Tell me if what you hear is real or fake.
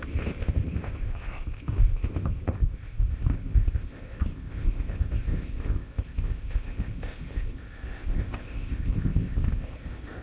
fake